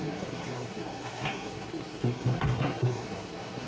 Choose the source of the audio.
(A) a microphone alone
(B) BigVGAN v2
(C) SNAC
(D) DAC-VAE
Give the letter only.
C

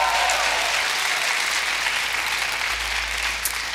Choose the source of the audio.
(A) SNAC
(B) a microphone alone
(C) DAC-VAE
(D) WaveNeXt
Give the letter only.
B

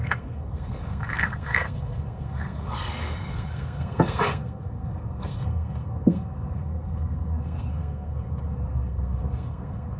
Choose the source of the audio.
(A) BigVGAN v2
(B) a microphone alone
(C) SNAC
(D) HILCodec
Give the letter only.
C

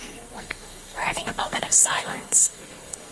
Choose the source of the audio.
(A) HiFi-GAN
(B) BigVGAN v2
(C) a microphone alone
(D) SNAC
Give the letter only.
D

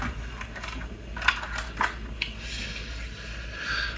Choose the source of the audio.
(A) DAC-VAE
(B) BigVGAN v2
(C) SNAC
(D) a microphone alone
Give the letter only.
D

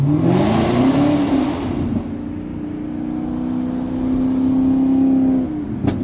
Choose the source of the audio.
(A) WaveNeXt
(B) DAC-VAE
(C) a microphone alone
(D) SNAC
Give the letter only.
C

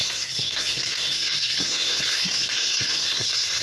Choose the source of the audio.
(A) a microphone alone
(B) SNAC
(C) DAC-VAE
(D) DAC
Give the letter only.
B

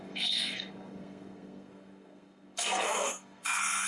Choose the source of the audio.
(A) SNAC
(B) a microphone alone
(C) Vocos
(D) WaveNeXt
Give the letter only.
A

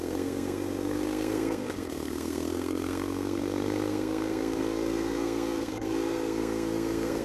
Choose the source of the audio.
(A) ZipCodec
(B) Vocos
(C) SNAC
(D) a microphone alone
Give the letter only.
C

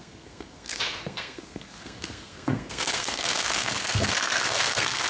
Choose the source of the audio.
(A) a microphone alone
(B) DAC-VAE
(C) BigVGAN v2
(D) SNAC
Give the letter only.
D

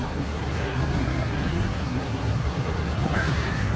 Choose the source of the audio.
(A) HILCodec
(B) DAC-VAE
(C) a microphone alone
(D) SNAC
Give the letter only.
D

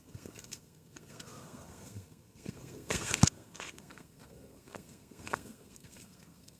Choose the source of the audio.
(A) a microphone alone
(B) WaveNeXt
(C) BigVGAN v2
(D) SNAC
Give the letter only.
D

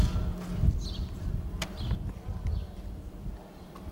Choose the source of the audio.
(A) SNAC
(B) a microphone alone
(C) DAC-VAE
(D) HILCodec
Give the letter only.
B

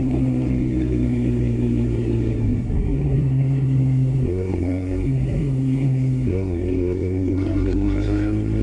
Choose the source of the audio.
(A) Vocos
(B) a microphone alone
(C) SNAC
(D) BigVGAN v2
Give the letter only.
C